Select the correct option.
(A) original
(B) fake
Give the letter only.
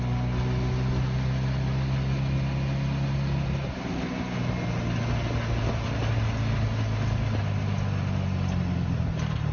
A